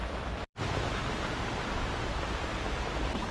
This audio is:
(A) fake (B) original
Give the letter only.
A